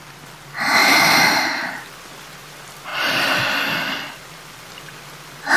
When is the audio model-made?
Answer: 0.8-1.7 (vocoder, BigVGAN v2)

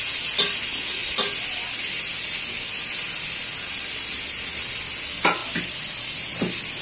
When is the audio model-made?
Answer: 1.0-4.7 (vocoder, BigVGAN v2); 5.4-5.9

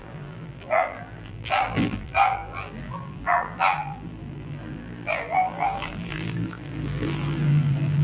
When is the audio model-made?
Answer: 0.0-8.0 (vocoder, BigVGAN v2)

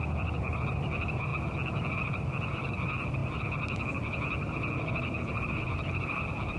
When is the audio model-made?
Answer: 0.0-1.3 (vocoder, BigVGAN v2); 1.9-6.6

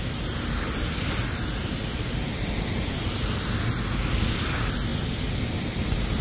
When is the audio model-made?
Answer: 1.2-3.4 (vocoder, BigVGAN v2); 4.9-6.2